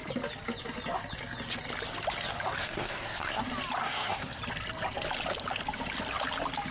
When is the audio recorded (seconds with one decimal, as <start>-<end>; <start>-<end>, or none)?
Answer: 0.0-2.6; 3.4-3.8; 4.4-6.7